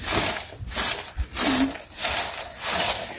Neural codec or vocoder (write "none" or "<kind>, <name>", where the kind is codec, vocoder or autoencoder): none